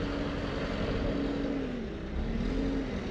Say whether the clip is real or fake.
real